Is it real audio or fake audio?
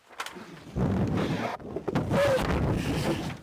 real